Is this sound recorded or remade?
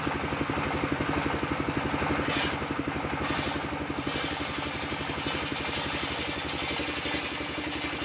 recorded